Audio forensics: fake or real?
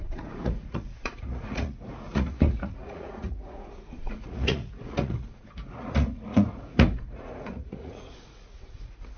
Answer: fake